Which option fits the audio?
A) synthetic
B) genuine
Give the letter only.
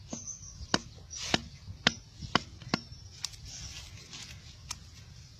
B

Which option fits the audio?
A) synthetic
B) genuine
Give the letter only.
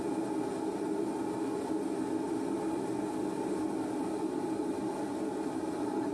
B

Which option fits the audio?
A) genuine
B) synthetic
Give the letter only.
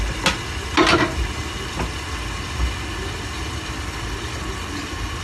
A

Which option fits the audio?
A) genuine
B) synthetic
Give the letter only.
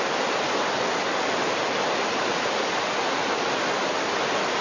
A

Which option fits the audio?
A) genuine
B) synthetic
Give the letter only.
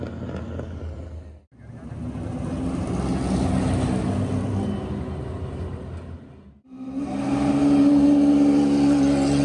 A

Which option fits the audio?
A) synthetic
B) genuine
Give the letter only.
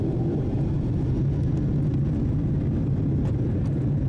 B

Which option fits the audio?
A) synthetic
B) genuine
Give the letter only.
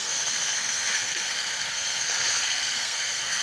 A